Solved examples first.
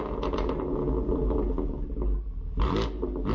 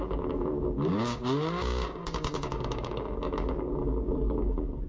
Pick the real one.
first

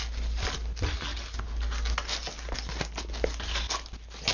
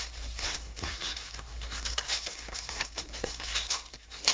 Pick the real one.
first